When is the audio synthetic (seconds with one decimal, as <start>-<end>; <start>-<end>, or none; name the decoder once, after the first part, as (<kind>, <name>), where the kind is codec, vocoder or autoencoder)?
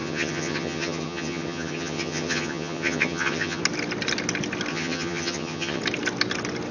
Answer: 0.0-3.6 (vocoder, HiFi-GAN); 4.7-5.8